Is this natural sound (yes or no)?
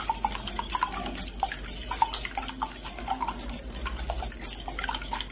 yes